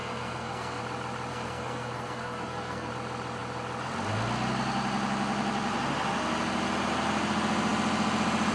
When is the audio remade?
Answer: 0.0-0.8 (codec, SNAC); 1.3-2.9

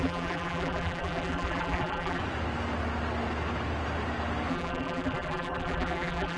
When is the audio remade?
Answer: 0.0-2.2 (vocoder, BigVGAN v2); 4.5-6.4

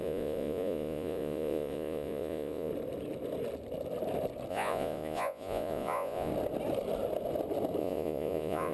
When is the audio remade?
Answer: 0.0-2.7 (vocoder, Vocos); 4.5-6.3; 7.8-8.7

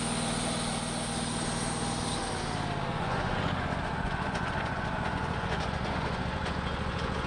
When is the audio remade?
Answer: 2.9-7.3 (vocoder, Vocos)

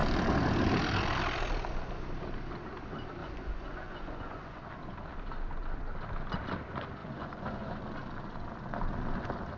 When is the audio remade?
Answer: 3.2-4.6 (vocoder, Vocos); 7.0-7.8